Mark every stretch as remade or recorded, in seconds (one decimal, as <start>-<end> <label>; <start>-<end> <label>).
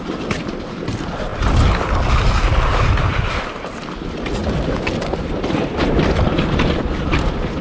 0.0-1.3 remade; 1.3-3.3 recorded; 3.3-4.4 remade; 4.4-5.1 recorded; 5.1-7.6 remade